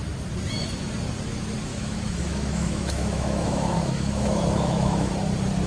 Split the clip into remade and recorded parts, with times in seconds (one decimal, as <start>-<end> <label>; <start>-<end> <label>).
0.0-1.7 recorded; 1.7-5.1 remade; 5.1-5.7 recorded